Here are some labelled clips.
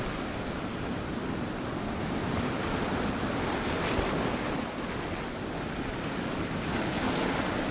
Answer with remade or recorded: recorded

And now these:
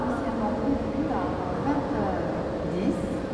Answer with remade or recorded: recorded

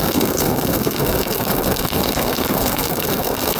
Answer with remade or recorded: remade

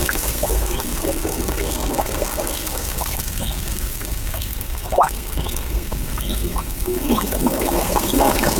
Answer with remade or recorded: remade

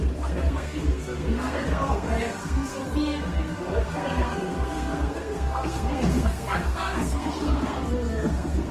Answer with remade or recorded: remade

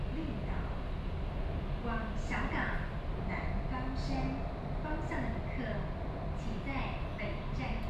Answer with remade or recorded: recorded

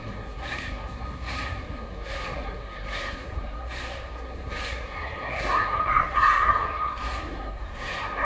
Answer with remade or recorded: remade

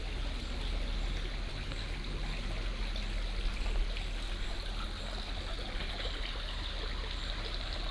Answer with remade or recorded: recorded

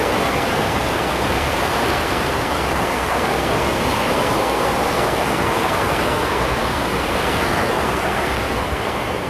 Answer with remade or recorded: remade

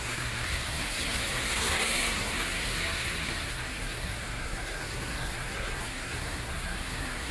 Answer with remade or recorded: remade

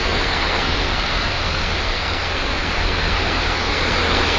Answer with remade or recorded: remade